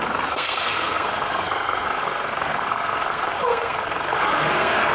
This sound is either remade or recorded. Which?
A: remade